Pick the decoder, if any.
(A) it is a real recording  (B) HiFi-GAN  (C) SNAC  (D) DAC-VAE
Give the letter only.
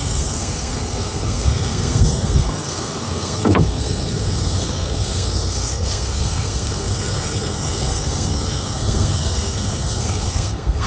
C